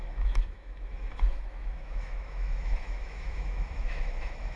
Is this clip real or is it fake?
fake